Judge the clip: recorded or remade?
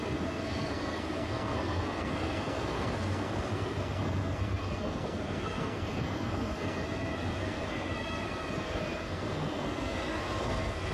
remade